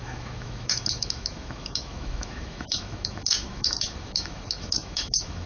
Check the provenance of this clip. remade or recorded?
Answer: remade